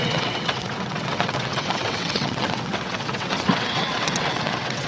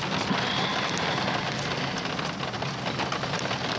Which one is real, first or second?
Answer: second